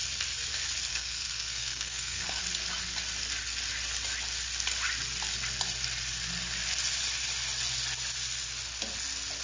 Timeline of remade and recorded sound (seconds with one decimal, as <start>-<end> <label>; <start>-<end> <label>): 0.0-0.9 recorded; 0.9-2.4 remade; 2.4-9.4 recorded

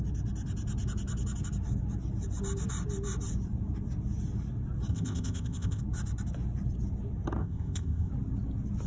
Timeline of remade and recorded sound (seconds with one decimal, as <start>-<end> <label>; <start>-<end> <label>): 0.0-4.9 recorded; 4.9-5.8 remade; 5.8-7.4 recorded; 7.4-8.1 remade; 8.1-8.9 recorded

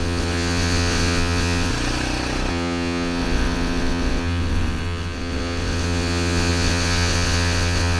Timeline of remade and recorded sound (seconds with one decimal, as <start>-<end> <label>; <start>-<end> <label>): 0.0-1.7 remade; 1.7-2.5 recorded; 2.5-8.0 remade

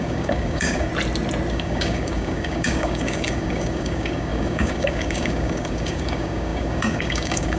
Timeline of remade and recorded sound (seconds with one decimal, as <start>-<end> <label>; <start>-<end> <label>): 0.0-0.9 remade; 0.9-1.5 recorded; 1.5-7.6 remade

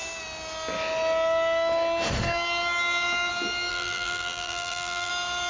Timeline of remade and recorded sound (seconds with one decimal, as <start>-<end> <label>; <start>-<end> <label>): 0.0-3.7 recorded; 3.7-5.1 remade; 5.1-5.5 recorded

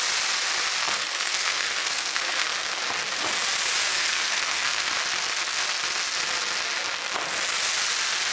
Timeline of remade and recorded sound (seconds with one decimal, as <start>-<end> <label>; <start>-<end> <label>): 0.0-0.8 recorded; 0.8-2.8 remade; 2.8-3.9 recorded; 3.9-4.9 remade; 4.9-8.3 recorded

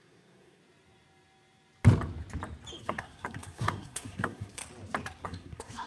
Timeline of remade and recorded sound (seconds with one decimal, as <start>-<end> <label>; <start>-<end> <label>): 0.0-0.6 remade; 0.6-2.8 recorded; 2.8-4.6 remade; 4.6-5.2 recorded; 5.2-5.9 remade